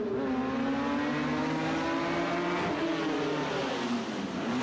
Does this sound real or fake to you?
real